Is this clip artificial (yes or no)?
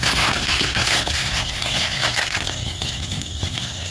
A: yes